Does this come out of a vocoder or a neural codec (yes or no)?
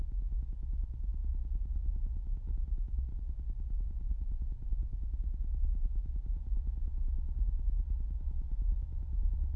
no